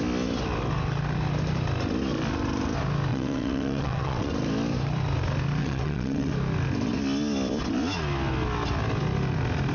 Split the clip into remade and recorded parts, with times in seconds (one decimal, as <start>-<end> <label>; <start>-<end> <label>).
0.0-3.1 recorded; 3.1-4.3 remade; 4.3-5.6 recorded; 5.6-6.3 remade; 6.3-9.7 recorded